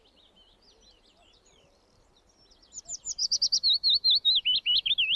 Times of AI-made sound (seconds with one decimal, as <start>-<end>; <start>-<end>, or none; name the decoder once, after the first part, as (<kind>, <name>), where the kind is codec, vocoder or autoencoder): 3.2-5.2 (autoencoder, DAC-VAE)